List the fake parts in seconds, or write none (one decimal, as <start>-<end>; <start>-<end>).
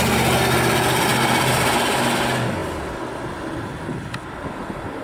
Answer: none